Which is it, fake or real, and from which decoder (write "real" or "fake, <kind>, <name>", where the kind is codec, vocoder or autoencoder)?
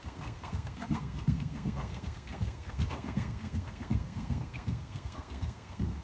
fake, codec, SNAC